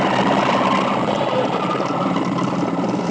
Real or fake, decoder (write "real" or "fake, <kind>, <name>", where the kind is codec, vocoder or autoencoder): real